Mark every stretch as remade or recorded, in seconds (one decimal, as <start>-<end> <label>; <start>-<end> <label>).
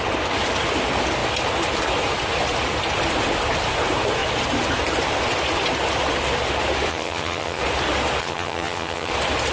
0.0-6.9 recorded; 6.9-7.6 remade; 7.6-8.2 recorded; 8.2-9.1 remade; 9.1-9.5 recorded